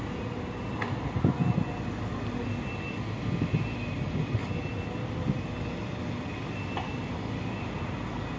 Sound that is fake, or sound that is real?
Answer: real